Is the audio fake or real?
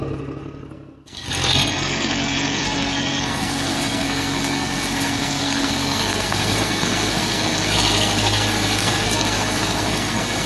fake